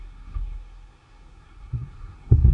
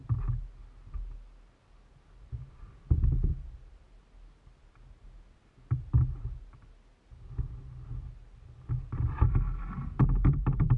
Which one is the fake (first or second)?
first